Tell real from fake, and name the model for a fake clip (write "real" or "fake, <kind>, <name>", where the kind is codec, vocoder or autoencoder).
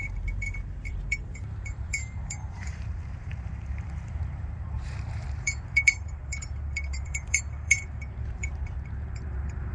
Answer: fake, vocoder, BigVGAN v2